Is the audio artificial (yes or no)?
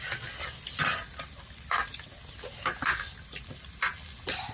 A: no